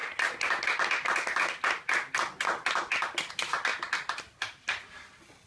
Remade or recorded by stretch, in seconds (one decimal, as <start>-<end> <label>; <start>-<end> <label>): 0.0-5.5 recorded